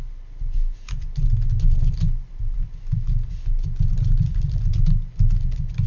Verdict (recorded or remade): recorded